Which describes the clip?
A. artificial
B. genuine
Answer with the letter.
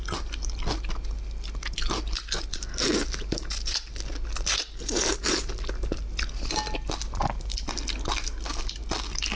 B